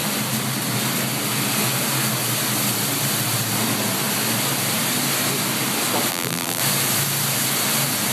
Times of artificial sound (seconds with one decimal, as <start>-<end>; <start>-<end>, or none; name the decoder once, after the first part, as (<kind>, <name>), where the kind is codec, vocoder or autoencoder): 6.1-6.6 (vocoder, BigVGAN v2)